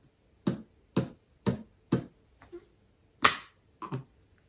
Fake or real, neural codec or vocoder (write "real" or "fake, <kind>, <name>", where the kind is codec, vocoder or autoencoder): real